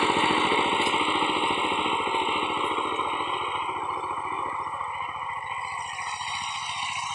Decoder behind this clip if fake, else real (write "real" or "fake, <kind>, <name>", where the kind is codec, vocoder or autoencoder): real